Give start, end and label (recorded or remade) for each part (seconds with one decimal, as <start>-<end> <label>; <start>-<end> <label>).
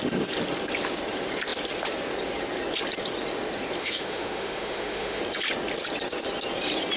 0.0-3.8 recorded; 3.8-5.2 remade; 5.2-7.0 recorded